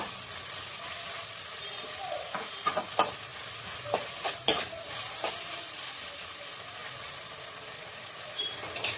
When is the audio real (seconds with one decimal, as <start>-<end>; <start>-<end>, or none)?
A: 0.0-9.0

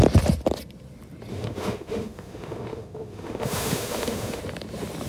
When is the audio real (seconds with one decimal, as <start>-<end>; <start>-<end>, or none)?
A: 0.0-1.3; 4.4-5.1

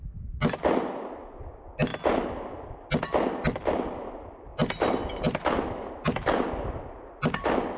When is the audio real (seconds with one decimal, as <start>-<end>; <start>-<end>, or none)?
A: 0.0-4.5; 5.9-7.8

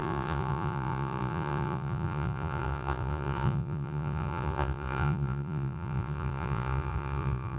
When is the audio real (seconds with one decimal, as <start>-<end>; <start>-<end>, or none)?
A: none

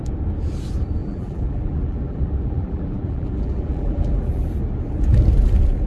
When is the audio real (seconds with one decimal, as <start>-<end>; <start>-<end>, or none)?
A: 0.0-1.0; 4.5-5.9

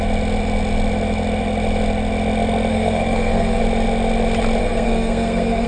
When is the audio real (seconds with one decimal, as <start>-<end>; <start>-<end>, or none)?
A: 0.0-2.7; 3.6-4.6